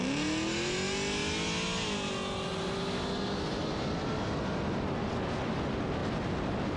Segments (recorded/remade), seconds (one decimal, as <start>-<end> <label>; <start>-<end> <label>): 0.0-6.8 recorded